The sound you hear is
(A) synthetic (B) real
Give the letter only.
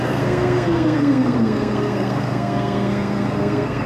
A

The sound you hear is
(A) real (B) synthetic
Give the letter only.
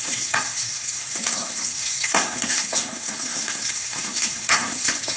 B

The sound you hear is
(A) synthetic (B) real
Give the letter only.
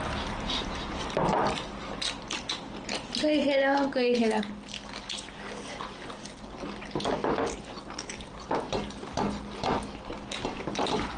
B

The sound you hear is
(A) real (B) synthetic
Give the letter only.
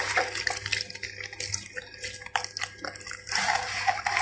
A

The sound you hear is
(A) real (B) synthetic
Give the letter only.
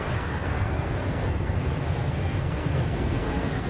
B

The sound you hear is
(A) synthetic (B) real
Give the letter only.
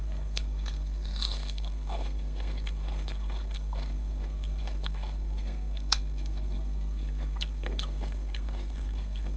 A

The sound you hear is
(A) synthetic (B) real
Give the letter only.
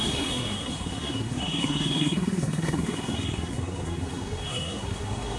A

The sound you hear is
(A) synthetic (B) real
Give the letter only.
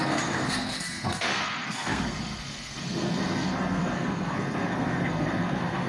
A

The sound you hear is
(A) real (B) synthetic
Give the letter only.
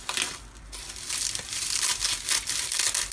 A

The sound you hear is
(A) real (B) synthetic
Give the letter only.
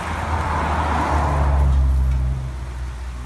A